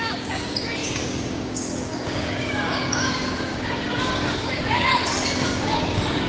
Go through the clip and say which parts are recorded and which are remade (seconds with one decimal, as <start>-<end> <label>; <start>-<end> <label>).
0.0-4.9 remade; 4.9-5.5 recorded; 5.5-6.3 remade